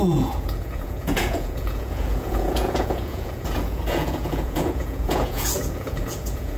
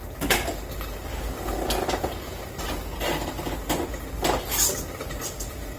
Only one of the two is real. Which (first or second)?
second